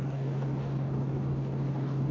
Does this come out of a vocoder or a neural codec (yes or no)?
yes